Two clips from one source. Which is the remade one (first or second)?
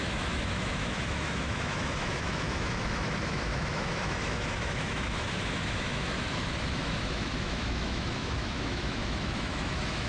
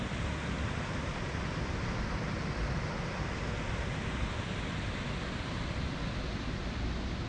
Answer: first